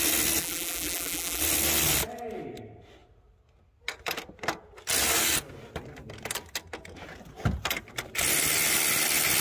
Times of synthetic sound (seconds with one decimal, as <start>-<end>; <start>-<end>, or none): 0.4-1.4